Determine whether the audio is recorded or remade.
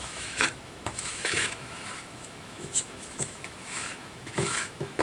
remade